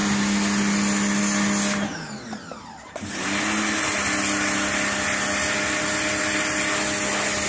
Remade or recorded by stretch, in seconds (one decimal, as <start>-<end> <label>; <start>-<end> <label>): 0.0-7.5 recorded